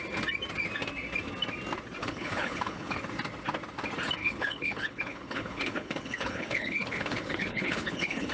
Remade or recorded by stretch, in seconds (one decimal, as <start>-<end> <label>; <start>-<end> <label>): 0.0-2.0 recorded; 2.0-3.0 remade; 3.0-4.2 recorded; 4.2-8.3 remade